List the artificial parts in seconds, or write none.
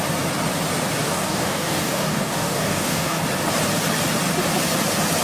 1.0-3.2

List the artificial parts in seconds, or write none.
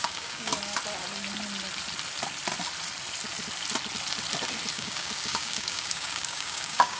0.0-0.5; 4.7-7.0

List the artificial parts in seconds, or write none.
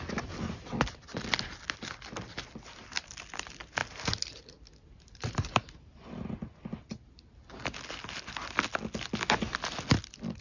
none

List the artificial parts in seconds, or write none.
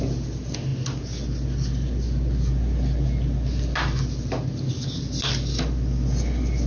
none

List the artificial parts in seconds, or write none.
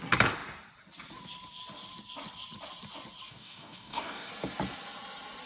3.3-4.3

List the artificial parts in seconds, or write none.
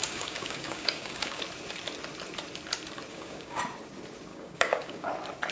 0.0-1.4; 3.1-3.6; 4.3-5.1